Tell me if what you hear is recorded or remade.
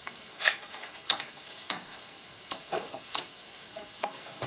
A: remade